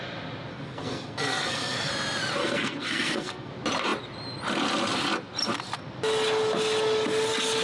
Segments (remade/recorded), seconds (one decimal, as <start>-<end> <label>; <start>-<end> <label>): 0.0-0.5 recorded; 0.5-1.9 remade; 1.9-2.4 recorded; 2.4-3.5 remade; 3.5-7.6 recorded

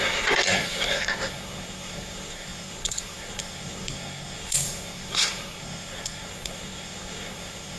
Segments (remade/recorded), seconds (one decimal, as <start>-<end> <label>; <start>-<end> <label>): 0.0-7.8 remade

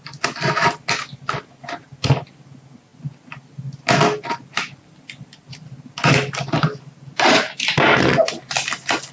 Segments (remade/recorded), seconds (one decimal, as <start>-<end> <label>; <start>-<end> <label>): 0.0-9.1 recorded

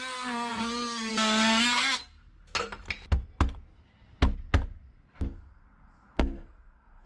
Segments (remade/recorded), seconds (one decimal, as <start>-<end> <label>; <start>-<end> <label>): 0.0-2.0 remade; 2.0-6.2 recorded; 6.2-7.1 remade

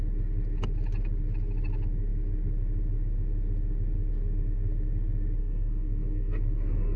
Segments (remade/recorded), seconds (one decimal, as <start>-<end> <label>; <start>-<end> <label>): 0.0-5.4 recorded; 5.4-7.0 remade

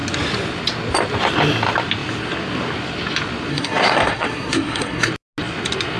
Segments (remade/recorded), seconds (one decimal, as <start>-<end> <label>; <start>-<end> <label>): 0.0-3.5 recorded; 3.5-5.1 remade; 5.1-6.0 recorded

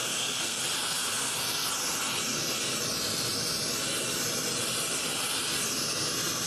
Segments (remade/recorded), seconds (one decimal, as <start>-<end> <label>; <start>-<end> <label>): 0.0-0.6 remade; 0.6-6.5 recorded

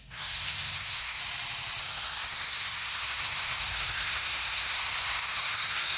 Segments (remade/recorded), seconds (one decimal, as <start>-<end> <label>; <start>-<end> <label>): 0.0-1.2 remade; 1.2-1.8 recorded; 1.8-6.0 remade